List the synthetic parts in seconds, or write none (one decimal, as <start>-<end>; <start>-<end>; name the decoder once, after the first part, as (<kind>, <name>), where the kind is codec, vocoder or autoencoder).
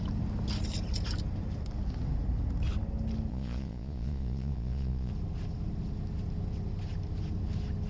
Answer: 3.3-5.1 (vocoder, Vocos)